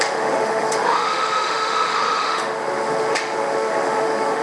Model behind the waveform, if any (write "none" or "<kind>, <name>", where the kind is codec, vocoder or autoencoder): autoencoder, DAC-VAE